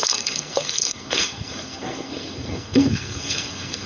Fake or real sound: fake